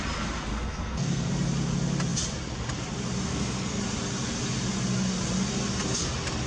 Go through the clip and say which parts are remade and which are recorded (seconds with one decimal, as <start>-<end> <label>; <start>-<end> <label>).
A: 0.0-0.5 recorded; 0.5-1.3 remade; 1.3-3.3 recorded; 3.3-3.8 remade; 3.8-6.5 recorded